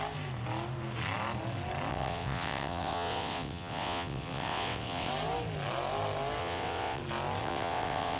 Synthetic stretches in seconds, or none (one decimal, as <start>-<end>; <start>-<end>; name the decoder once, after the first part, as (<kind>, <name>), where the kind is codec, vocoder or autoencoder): 1.9-5.1 (vocoder, WaveNeXt); 6.4-7.0; 7.4-8.2